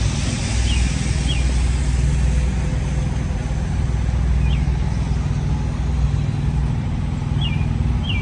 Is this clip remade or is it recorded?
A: recorded